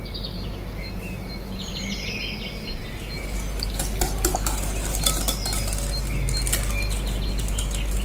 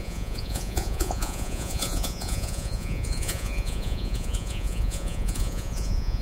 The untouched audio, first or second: first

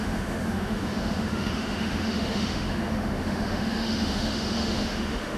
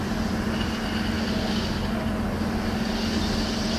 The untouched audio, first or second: second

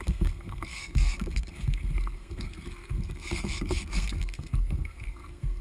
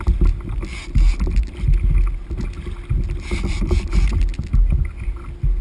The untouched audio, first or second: second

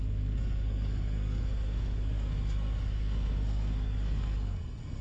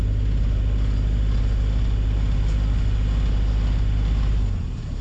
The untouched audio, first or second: second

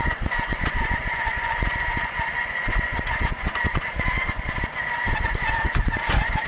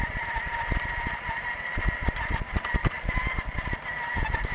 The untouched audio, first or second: second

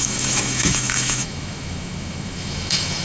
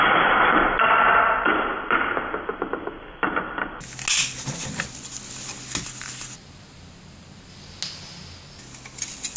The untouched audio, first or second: second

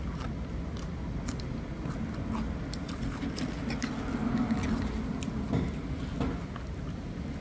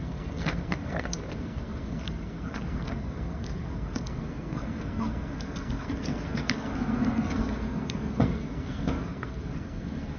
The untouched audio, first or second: first